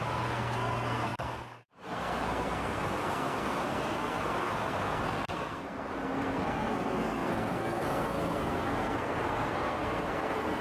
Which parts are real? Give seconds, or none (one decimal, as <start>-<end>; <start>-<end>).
none